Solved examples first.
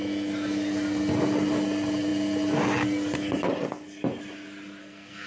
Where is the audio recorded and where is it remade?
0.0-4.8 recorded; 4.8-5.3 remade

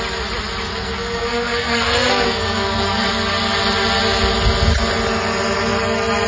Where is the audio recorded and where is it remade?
0.0-0.7 recorded; 0.7-3.1 remade; 3.1-6.3 recorded

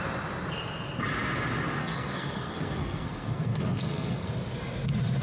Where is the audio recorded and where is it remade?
0.0-1.8 recorded; 1.8-4.3 remade; 4.3-5.2 recorded